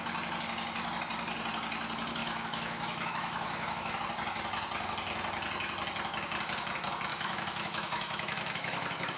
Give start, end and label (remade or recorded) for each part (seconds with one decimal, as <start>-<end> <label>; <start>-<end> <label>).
0.0-2.2 recorded; 2.2-4.0 remade; 4.0-7.1 recorded; 7.1-9.2 remade